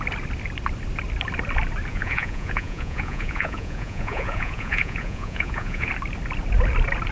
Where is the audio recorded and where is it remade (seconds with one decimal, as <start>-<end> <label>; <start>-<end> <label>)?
0.0-1.9 recorded; 1.9-5.9 remade; 5.9-7.1 recorded